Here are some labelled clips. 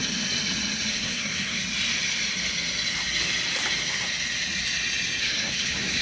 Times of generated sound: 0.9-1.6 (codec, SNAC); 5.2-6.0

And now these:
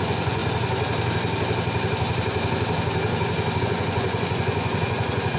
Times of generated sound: 0.0-0.4 (vocoder, Vocos); 3.6-5.4